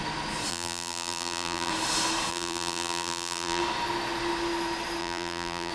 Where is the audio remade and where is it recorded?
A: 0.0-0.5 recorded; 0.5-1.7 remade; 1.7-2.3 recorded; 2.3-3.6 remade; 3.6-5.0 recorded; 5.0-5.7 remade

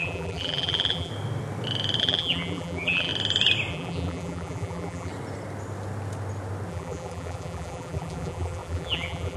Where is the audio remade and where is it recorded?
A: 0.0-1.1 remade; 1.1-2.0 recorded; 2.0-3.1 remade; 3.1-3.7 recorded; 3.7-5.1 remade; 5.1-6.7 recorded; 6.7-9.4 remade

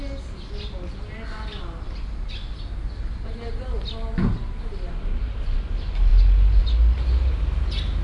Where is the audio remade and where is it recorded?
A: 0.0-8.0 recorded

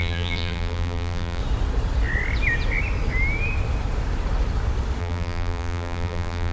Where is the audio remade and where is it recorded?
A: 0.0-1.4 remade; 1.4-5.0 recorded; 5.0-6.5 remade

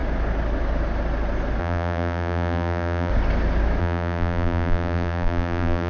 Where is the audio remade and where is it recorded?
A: 0.0-1.6 recorded; 1.6-3.1 remade; 3.1-3.8 recorded; 3.8-5.9 remade

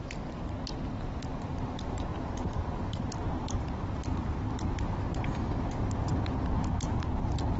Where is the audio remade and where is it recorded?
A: 0.0-2.1 recorded; 2.1-3.9 remade; 3.9-7.6 recorded

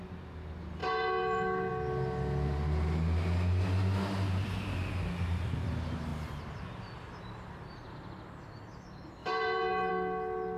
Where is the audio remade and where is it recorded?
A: 0.0-0.8 recorded; 0.8-1.7 remade; 1.7-9.2 recorded; 9.2-9.9 remade; 9.9-10.6 recorded